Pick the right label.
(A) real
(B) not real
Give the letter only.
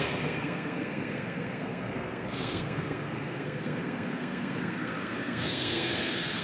B